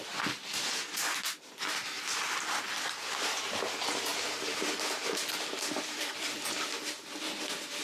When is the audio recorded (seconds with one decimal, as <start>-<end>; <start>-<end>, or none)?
0.0-4.1; 4.9-7.8